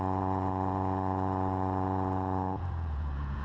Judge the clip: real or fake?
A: fake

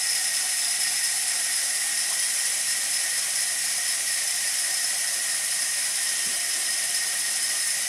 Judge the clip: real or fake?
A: fake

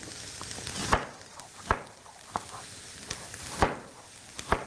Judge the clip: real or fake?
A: real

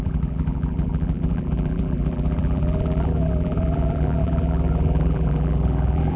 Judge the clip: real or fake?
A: fake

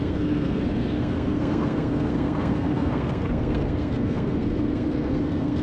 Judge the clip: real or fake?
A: fake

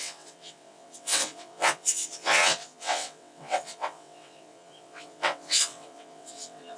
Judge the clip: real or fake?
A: fake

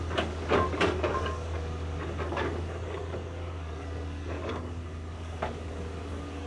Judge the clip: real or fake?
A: fake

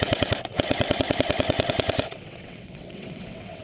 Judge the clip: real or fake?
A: fake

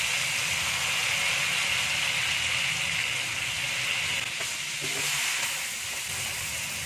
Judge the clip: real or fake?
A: real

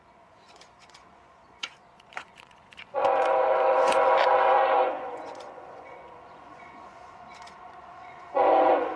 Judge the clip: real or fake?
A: fake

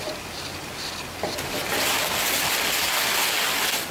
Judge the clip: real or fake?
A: real